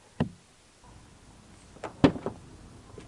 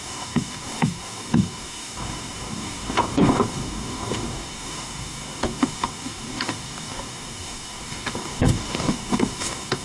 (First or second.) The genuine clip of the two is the first